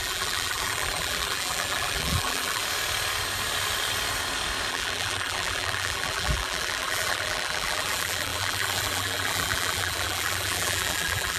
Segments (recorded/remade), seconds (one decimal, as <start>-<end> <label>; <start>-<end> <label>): 0.0-2.6 remade; 2.6-4.7 recorded; 4.7-11.4 remade